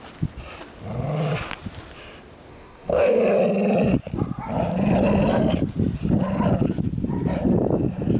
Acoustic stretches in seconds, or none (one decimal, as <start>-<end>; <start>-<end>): 0.0-2.5; 3.2-8.2